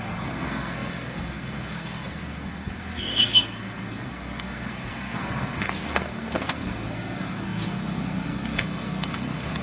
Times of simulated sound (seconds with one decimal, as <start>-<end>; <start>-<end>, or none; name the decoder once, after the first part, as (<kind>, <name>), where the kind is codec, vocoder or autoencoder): 0.0-9.6 (codec, SNAC)